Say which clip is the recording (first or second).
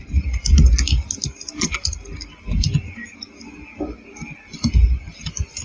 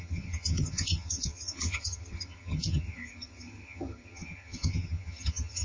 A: first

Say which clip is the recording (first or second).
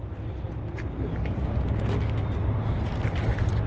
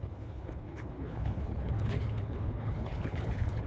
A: first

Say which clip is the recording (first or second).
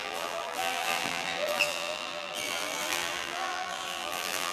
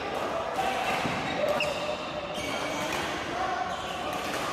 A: second